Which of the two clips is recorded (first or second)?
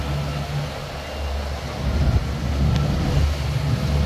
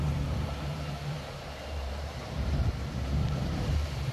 first